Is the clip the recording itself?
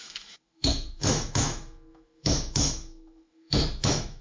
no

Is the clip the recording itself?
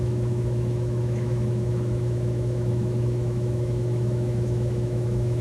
no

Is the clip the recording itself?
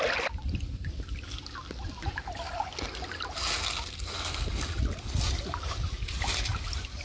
yes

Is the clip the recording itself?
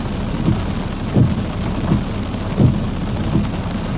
yes